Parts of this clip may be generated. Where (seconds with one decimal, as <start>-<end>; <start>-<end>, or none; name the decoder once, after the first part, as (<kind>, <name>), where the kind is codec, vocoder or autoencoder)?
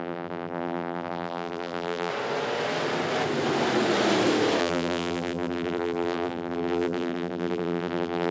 0.0-2.1 (vocoder, BigVGAN v2); 4.6-8.3